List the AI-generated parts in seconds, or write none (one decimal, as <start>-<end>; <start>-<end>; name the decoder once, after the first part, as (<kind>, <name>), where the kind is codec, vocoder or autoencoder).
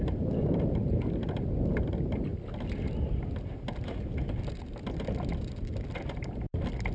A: none